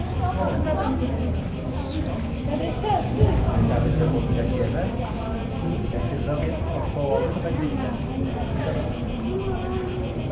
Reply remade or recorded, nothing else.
recorded